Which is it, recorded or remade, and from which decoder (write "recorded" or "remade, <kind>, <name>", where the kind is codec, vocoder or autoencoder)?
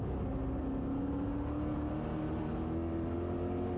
recorded